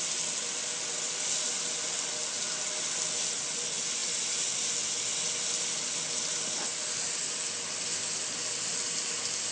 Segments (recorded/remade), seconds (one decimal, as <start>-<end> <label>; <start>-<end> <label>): 0.0-9.5 recorded